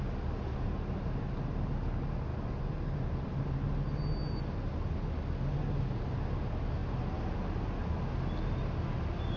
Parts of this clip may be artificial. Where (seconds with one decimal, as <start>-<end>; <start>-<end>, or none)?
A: none